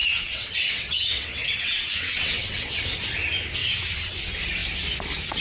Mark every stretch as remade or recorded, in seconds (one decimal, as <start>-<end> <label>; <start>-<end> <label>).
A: 0.0-2.8 remade; 2.8-3.6 recorded; 3.6-4.1 remade; 4.1-5.4 recorded